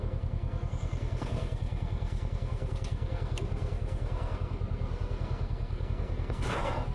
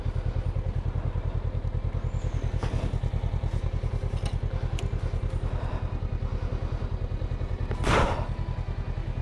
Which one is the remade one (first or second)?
first